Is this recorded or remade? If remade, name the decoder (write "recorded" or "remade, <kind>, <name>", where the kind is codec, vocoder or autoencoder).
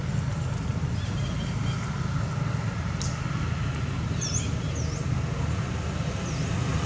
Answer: recorded